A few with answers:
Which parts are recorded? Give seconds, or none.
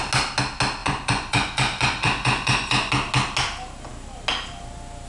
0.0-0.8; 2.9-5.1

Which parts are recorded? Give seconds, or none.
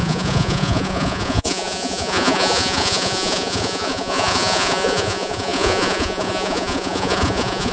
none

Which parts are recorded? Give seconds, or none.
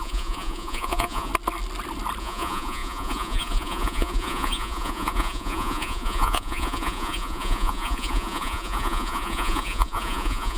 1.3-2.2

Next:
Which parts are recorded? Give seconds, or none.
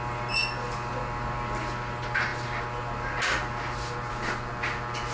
0.0-5.1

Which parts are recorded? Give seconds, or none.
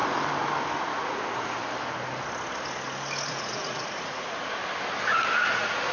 0.0-0.8; 1.6-3.3; 4.6-5.4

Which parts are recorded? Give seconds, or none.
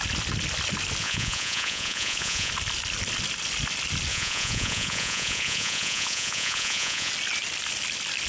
0.0-1.0; 2.5-4.1; 7.1-8.3